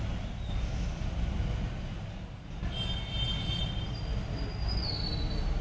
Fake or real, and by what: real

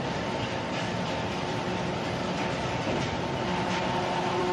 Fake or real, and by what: fake, vocoder, BigVGAN v2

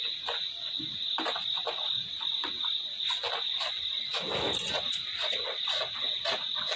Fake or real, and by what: real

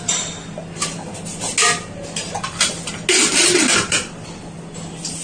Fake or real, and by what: real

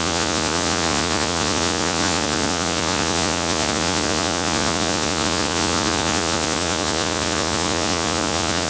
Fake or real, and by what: fake, vocoder, Vocos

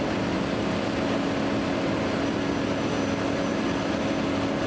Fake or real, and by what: real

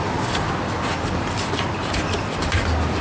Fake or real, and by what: fake, vocoder, BigVGAN v2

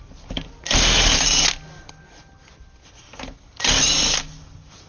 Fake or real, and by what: real